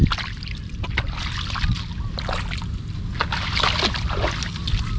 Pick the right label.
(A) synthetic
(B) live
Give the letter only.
B